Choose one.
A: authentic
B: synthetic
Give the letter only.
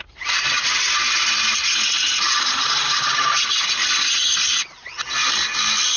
A